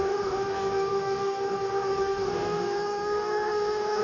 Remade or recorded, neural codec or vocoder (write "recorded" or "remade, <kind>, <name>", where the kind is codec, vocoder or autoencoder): remade, codec, DAC